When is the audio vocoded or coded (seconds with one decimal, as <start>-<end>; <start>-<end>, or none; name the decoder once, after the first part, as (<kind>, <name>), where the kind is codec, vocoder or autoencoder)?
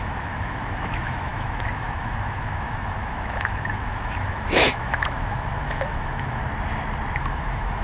0.0-6.4 (autoencoder, DAC-VAE); 7.2-7.8